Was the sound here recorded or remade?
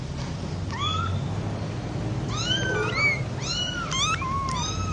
recorded